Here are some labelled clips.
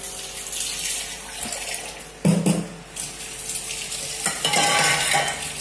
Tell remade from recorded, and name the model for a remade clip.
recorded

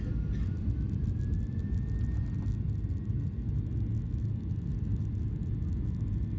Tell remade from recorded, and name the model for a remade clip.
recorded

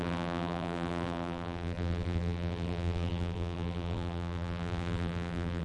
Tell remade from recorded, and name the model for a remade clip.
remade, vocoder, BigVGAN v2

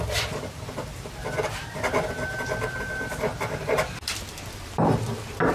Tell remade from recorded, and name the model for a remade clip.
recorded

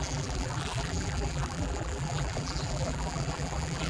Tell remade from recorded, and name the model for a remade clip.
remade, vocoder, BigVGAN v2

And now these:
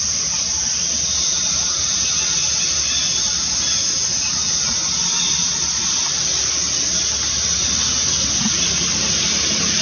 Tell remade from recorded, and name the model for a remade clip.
recorded